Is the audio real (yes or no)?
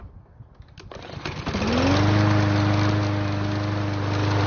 yes